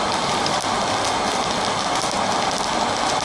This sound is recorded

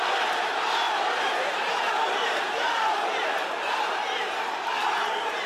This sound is remade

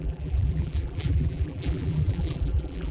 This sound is remade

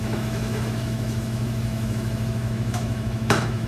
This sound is remade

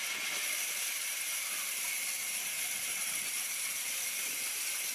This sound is remade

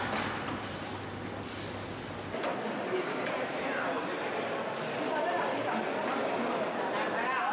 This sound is recorded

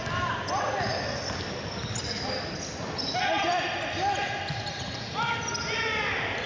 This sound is recorded